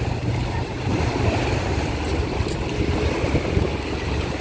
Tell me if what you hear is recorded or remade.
recorded